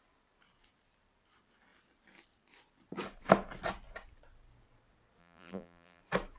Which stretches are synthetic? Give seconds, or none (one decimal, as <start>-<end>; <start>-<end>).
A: 5.2-6.0